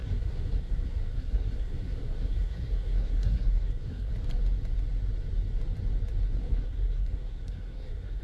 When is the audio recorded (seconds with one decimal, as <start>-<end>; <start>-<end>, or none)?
4.1-6.4